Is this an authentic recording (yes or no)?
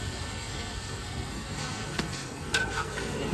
no